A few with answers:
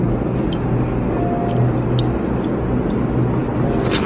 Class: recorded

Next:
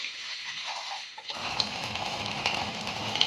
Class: remade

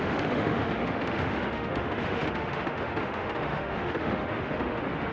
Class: remade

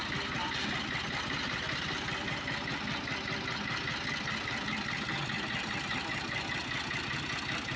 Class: recorded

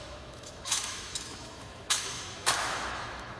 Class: remade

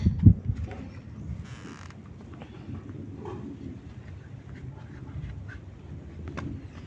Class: recorded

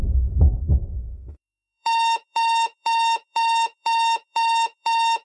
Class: remade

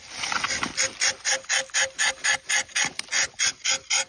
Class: recorded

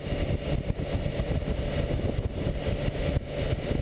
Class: recorded